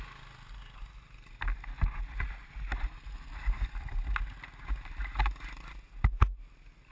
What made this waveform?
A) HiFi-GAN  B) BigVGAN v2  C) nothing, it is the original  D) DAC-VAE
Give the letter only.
C